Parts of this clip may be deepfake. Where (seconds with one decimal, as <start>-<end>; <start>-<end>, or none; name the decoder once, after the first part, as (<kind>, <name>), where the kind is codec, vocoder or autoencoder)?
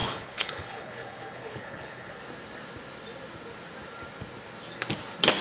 0.0-2.2 (codec, HILCodec)